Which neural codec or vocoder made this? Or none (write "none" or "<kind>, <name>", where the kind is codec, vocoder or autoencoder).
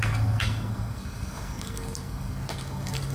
codec, SNAC